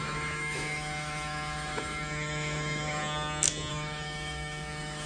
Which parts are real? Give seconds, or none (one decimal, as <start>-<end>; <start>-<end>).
3.0-3.7